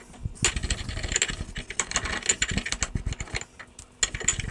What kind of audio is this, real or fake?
real